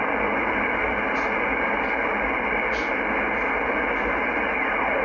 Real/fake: real